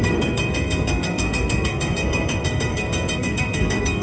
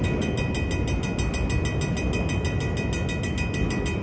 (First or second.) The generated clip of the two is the first